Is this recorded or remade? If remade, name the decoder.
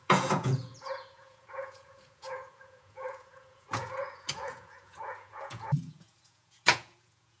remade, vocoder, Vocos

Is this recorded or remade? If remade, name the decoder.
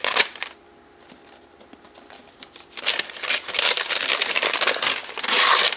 recorded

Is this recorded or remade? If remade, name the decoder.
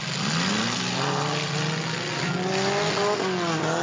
recorded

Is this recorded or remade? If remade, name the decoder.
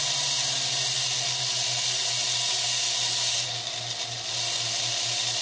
recorded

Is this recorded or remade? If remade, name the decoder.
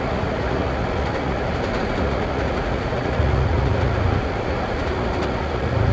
remade, vocoder, Vocos